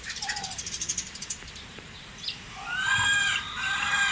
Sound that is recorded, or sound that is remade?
remade